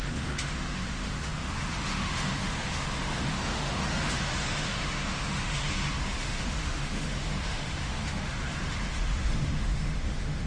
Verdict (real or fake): fake